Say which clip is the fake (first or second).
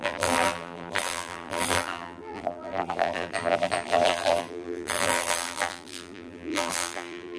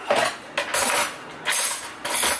first